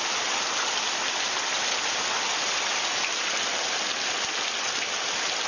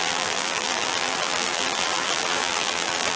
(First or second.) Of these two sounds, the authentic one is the first